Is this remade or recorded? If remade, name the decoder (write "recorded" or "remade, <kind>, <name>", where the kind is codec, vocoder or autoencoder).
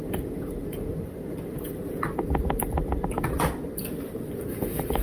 remade, vocoder, BigVGAN v2